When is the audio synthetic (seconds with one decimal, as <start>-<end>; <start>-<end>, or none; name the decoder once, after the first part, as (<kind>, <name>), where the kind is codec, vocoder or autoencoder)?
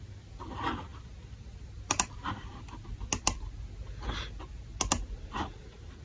none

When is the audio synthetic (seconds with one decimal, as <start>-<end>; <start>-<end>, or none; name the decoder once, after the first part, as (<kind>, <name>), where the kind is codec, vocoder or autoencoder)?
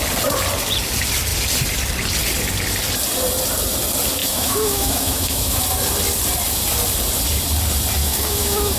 4.2-5.6 (autoencoder, DAC-VAE); 8.0-8.8